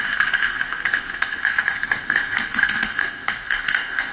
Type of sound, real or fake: fake